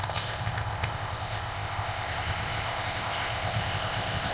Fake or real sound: fake